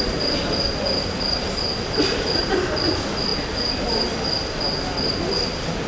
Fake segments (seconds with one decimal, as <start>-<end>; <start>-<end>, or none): none